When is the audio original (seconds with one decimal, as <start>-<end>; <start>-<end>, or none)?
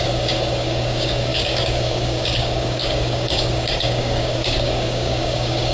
none